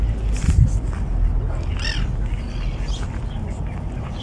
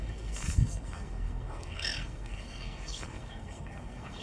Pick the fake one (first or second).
second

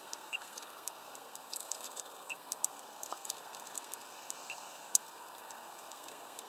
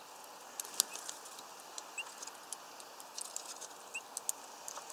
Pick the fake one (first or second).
first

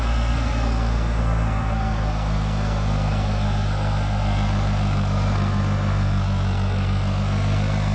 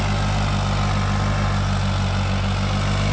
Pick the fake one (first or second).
first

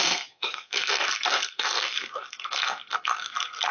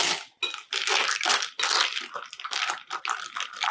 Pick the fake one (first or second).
first